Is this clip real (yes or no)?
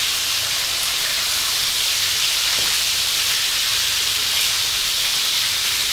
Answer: no